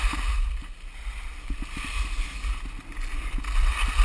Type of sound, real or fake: real